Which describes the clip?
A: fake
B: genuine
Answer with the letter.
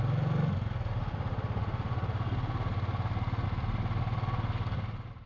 B